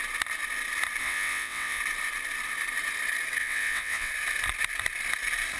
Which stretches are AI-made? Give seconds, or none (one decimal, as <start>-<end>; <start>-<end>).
1.0-1.8; 3.4-4.1